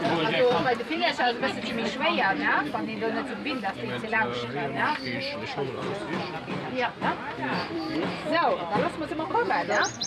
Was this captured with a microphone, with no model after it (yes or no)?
no